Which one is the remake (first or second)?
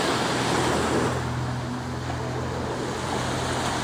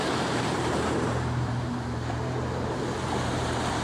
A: second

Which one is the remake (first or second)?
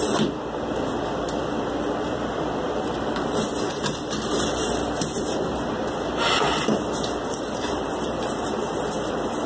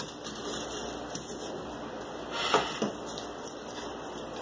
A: first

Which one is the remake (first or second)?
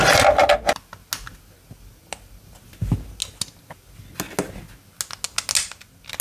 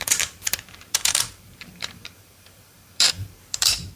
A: second